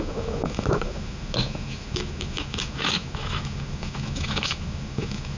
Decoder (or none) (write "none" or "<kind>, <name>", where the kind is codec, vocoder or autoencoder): autoencoder, DAC-VAE